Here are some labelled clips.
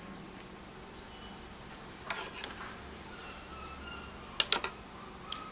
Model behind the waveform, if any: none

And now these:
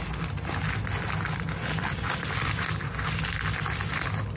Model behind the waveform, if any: none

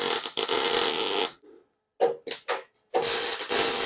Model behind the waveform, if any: none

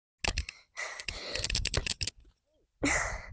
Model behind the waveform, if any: none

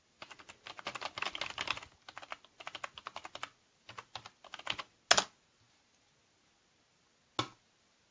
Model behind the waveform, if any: none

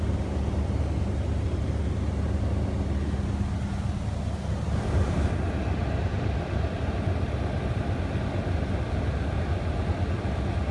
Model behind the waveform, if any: none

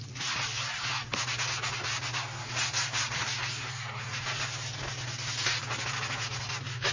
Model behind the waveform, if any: none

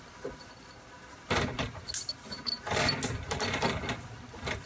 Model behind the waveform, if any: none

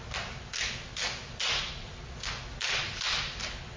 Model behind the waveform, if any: none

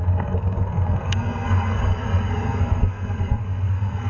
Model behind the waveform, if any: codec, SNAC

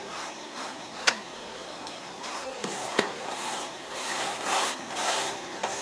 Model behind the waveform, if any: codec, SNAC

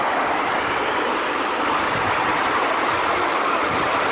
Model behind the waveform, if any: none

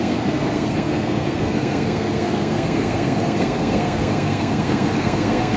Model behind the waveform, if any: codec, SNAC